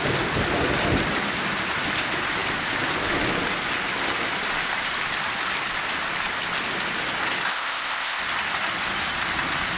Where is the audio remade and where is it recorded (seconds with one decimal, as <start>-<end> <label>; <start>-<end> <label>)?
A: 0.0-7.5 recorded; 7.5-8.2 remade; 8.2-9.8 recorded